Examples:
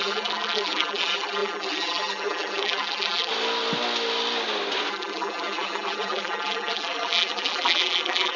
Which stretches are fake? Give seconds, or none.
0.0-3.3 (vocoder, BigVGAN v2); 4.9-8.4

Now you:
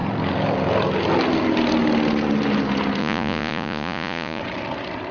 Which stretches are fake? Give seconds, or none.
3.0-4.4 (vocoder, Vocos)